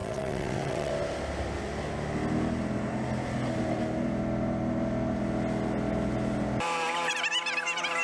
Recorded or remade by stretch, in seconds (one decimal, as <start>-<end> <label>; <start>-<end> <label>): 0.0-0.9 remade; 0.9-8.0 recorded